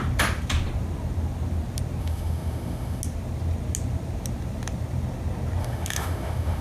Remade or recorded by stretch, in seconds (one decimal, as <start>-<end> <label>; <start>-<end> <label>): 0.0-2.0 recorded; 2.0-3.0 remade; 3.0-5.6 recorded; 5.6-6.6 remade